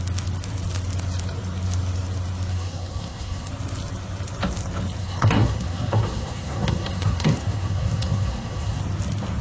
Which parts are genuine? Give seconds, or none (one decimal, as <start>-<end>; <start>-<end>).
0.0-2.5; 3.5-5.0; 8.8-9.4